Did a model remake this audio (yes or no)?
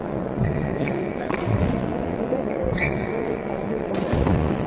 yes